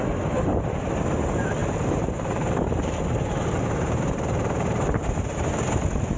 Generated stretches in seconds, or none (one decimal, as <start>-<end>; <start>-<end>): 1.6-5.0